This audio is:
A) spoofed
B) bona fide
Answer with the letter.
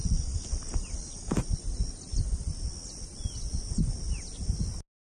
B